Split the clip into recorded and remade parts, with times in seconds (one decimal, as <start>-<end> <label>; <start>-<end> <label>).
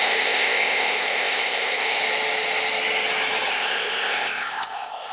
0.0-2.0 remade; 2.0-3.5 recorded; 3.5-5.1 remade